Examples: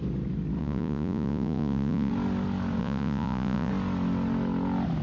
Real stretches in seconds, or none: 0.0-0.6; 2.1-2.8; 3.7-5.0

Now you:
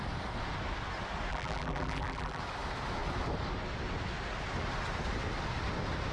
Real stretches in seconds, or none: 0.0-1.3; 2.4-6.1

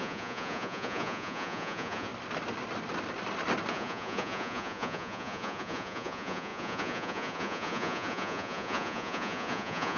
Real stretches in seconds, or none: 2.1-3.7

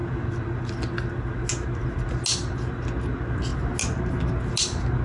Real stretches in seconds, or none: 0.0-5.0

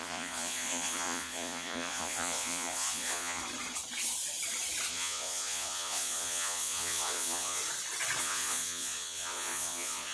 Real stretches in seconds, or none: 3.4-4.9; 7.6-8.2

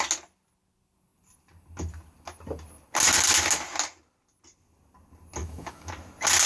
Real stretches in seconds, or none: 0.0-5.4; 5.9-6.5

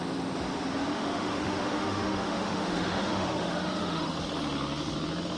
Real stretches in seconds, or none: 0.0-0.9; 4.1-5.4

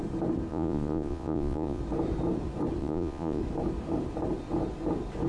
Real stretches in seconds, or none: 0.0-0.5; 1.8-2.8; 3.4-5.3